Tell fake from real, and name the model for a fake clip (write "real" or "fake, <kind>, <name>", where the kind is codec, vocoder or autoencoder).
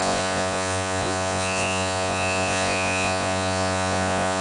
fake, vocoder, Vocos